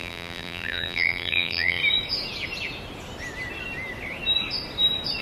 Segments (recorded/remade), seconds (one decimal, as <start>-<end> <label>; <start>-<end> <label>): 0.0-1.8 remade; 1.8-5.2 recorded